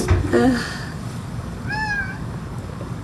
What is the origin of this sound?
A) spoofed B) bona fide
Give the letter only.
A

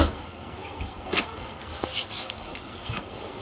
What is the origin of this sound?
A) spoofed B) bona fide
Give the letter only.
A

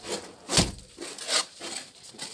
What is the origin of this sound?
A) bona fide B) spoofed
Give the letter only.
A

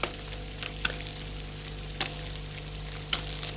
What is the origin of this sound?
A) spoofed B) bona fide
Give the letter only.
B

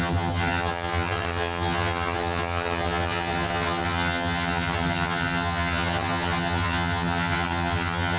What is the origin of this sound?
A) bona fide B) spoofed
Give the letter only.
B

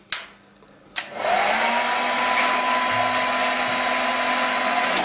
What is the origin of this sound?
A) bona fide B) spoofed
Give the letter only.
A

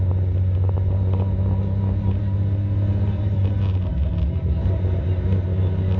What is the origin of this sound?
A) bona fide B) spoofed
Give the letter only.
A